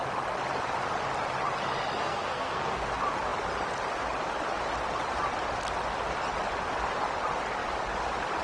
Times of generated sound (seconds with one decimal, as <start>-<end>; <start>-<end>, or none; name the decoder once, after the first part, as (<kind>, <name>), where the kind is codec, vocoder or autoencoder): 2.0-2.8 (codec, SNAC)